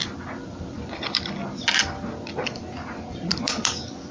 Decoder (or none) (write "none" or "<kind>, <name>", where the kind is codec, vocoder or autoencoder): vocoder, BigVGAN v2